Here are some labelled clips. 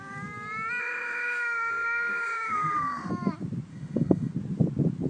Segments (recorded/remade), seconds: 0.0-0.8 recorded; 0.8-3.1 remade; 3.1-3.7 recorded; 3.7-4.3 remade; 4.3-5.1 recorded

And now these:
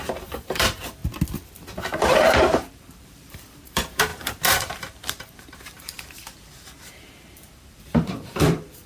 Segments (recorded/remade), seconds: 0.0-1.0 remade; 1.0-2.0 recorded; 2.0-8.9 remade

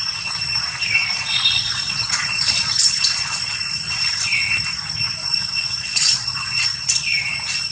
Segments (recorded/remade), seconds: 0.0-1.0 recorded; 1.0-3.8 remade; 3.8-5.2 recorded; 5.2-7.3 remade; 7.3-7.7 recorded